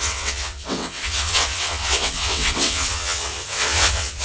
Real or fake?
fake